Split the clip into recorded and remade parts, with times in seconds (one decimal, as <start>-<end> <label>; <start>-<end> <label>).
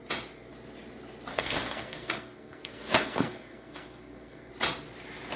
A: 0.0-1.3 recorded; 1.3-4.5 remade; 4.5-5.4 recorded